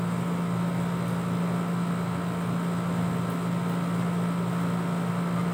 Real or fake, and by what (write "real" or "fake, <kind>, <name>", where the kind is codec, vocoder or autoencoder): real